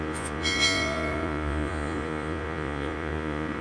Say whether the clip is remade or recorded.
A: remade